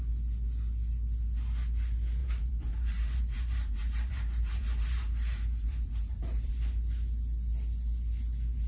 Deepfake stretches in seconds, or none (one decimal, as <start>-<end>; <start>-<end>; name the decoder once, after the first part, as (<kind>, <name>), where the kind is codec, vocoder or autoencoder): 2.2-6.5 (vocoder, BigVGAN v2)